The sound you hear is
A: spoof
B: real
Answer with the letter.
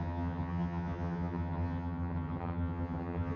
A